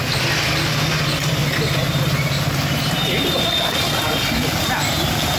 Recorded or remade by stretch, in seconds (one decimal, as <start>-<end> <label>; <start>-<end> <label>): 0.0-5.4 recorded